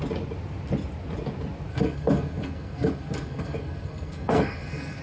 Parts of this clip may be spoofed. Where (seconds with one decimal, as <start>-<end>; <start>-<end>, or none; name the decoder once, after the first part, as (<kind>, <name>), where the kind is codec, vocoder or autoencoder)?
1.7-5.0 (codec, SNAC)